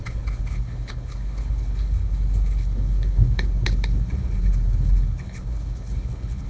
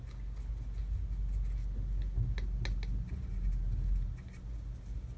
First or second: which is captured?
second